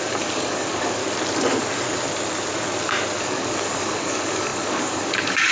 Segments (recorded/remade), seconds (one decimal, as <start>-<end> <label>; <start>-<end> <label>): 0.0-1.0 remade; 1.0-3.2 recorded; 3.2-5.5 remade